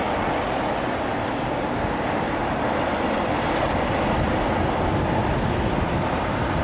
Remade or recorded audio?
recorded